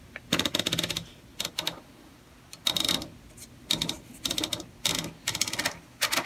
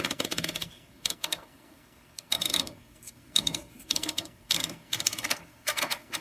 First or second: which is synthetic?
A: second